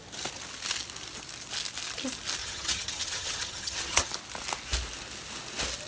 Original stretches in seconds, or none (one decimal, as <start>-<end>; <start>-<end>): 0.0-2.4; 4.1-5.9